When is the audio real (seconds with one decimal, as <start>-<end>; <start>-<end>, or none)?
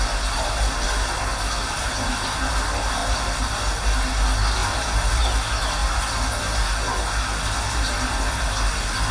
0.0-1.6; 2.5-3.0; 3.8-4.6; 5.2-9.1